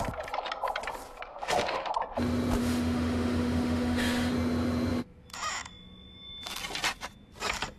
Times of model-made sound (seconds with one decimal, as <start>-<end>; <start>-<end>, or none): 1.3-1.9; 2.6-4.3